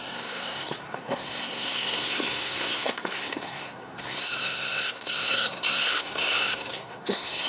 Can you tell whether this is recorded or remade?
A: remade